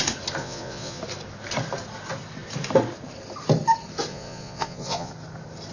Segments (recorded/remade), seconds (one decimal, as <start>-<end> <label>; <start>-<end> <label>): 0.0-0.4 recorded; 0.4-1.0 remade; 1.0-4.1 recorded; 4.1-5.1 remade; 5.1-5.7 recorded